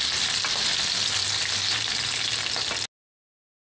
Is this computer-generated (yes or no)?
no